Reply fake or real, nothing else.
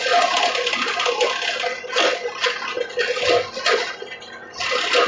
real